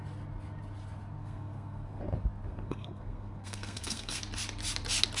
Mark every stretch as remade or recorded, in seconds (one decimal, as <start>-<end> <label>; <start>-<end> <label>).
0.0-1.2 recorded; 1.2-2.0 remade; 2.0-2.5 recorded; 2.5-4.2 remade; 4.2-5.2 recorded